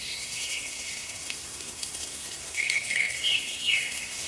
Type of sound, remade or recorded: remade